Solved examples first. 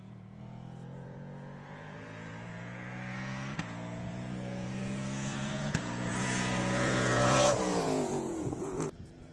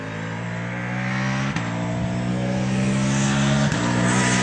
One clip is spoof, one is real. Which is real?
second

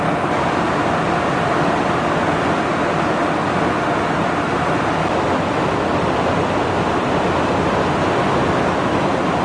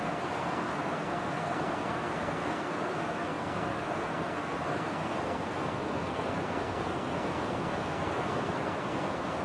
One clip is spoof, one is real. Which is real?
first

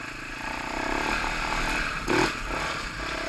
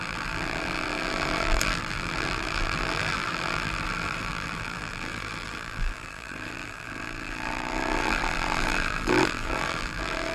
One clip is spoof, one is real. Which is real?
first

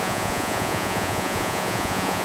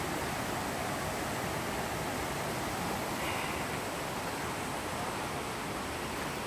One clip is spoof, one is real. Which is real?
second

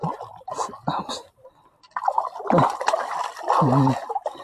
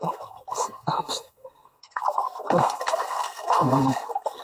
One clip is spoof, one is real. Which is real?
first